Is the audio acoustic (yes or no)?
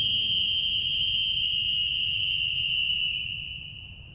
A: yes